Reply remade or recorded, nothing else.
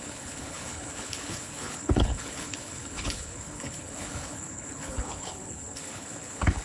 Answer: remade